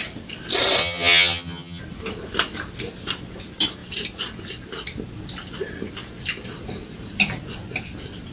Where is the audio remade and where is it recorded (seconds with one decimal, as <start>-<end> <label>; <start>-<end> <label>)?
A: 0.0-0.8 recorded; 0.8-1.8 remade; 1.8-8.3 recorded